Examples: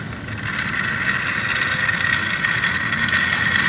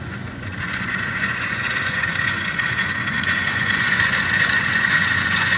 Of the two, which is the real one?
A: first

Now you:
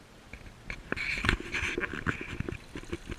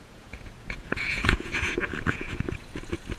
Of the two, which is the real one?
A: first